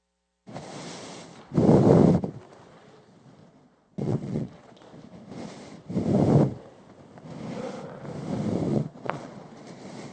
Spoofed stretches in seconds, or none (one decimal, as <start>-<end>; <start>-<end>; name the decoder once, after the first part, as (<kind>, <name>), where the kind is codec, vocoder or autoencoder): 3.4-5.0 (vocoder, Vocos); 8.7-10.1